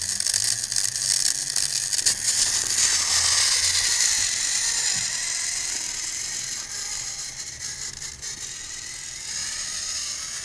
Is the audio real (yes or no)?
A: yes